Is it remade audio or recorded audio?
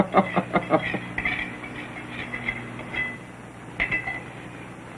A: recorded